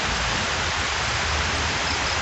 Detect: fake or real real